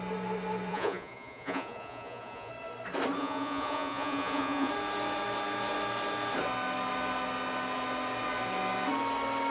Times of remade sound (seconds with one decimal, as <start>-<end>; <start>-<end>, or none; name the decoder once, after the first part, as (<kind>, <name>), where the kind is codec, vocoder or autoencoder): 0.7-2.5 (vocoder, Vocos); 3.2-4.7